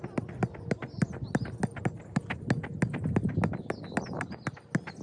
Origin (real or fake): real